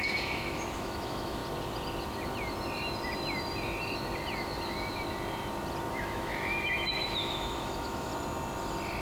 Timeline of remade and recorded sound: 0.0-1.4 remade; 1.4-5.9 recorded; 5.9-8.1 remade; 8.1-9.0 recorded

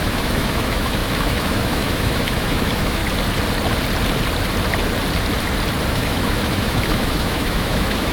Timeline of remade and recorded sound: 0.0-3.0 remade; 3.0-5.9 recorded; 5.9-8.1 remade

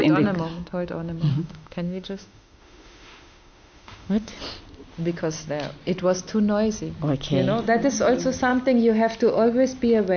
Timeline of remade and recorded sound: 0.0-1.3 recorded; 1.3-4.3 remade; 4.3-10.2 recorded

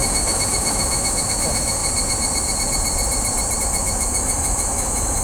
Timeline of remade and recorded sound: 0.0-1.8 remade; 1.8-3.6 recorded; 3.6-5.2 remade

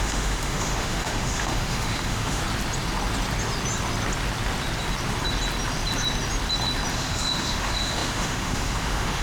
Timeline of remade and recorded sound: 0.0-2.4 remade; 2.4-6.9 recorded; 6.9-9.2 remade

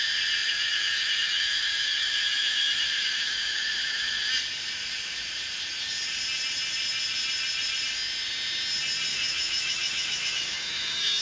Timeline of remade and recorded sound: 0.0-0.4 recorded; 0.4-4.3 remade; 4.3-9.1 recorded; 9.1-11.2 remade

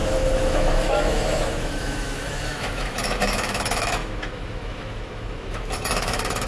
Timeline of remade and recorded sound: 0.0-6.5 remade